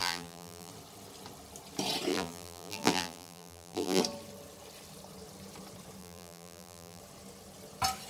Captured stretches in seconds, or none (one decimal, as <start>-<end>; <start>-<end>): 0.7-2.1; 4.0-6.0; 7.0-8.1